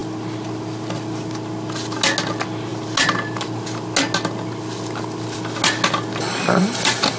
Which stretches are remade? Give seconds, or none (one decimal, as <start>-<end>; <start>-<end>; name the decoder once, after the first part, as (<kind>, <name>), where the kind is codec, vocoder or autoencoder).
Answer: none